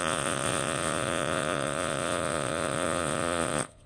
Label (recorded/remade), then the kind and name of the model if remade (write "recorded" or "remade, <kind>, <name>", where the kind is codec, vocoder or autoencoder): remade, vocoder, Vocos